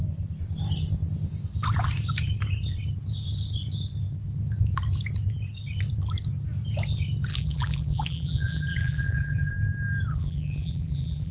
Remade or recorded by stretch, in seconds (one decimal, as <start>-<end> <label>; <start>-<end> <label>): 0.0-7.3 recorded; 7.3-9.5 remade; 9.5-10.1 recorded; 10.1-11.3 remade